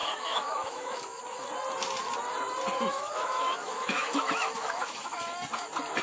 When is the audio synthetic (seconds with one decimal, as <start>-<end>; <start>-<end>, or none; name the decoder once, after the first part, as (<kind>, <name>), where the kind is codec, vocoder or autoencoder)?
0.0-1.2 (autoencoder, DAC-VAE); 2.9-5.2